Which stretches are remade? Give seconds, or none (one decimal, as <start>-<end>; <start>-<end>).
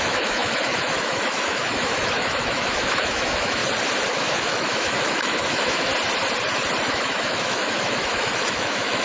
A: 0.0-3.6; 4.1-5.9; 6.9-9.0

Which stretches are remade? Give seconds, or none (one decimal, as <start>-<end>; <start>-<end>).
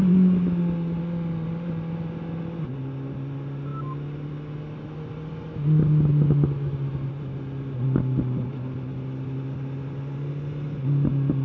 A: none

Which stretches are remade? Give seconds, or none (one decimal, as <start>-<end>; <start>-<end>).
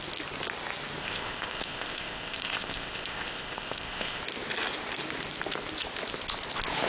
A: 1.0-4.2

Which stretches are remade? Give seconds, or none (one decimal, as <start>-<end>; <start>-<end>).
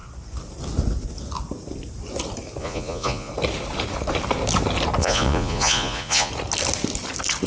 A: 2.6-3.3; 5.0-6.3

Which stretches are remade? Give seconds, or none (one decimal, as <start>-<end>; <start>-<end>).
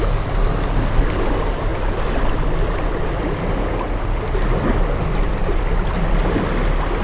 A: none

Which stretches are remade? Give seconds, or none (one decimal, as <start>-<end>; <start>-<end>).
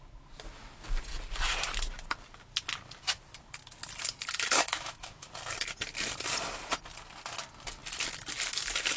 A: 4.5-5.3